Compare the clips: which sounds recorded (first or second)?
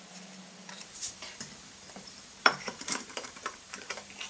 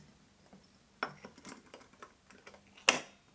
second